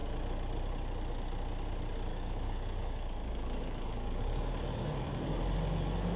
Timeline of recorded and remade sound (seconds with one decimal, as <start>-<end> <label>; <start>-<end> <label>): 0.0-2.1 recorded; 2.1-5.4 remade; 5.4-6.2 recorded